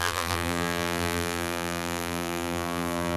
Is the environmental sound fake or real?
fake